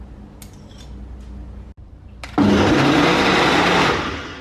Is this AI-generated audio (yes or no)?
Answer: no